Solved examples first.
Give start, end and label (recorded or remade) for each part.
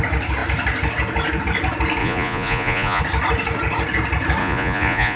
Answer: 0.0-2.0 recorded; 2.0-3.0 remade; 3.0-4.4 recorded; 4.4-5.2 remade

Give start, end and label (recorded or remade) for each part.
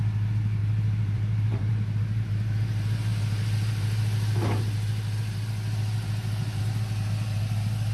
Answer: 0.0-0.6 recorded; 0.6-1.7 remade; 1.7-7.9 recorded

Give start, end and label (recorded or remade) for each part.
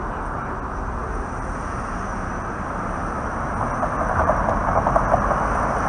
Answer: 0.0-1.0 recorded; 1.0-3.1 remade; 3.1-5.9 recorded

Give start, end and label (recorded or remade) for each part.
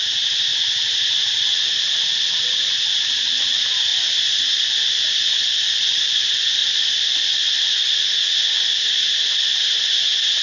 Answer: 0.0-0.5 recorded; 0.5-1.4 remade; 1.4-3.9 recorded; 3.9-4.6 remade; 4.6-10.4 recorded